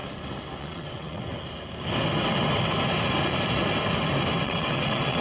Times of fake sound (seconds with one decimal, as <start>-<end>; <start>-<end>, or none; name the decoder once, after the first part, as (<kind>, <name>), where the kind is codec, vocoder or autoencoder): 0.6-1.3 (vocoder, WaveNeXt); 4.4-5.2